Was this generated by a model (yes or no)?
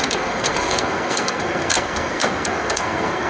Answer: yes